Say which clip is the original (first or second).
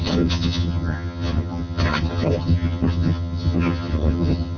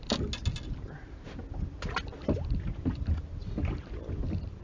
second